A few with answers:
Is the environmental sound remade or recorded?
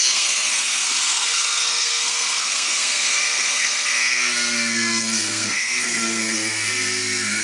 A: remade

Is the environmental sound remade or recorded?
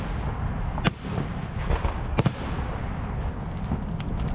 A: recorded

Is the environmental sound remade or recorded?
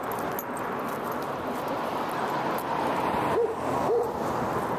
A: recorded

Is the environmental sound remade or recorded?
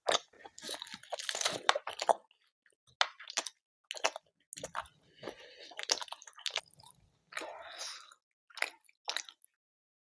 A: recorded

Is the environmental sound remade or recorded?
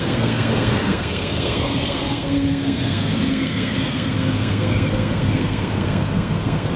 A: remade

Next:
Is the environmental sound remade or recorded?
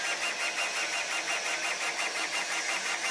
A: recorded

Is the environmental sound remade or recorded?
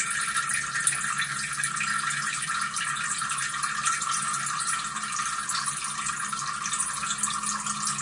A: recorded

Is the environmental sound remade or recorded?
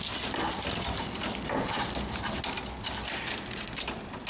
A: recorded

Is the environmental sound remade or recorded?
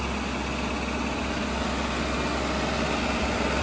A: recorded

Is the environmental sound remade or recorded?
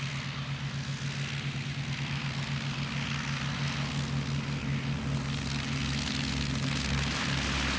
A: recorded